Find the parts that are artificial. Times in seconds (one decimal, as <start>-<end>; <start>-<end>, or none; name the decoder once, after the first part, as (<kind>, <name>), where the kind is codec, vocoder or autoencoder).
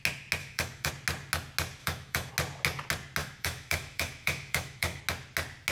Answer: 0.4-0.9 (autoencoder, DAC-VAE); 1.8-2.3; 3.2-5.0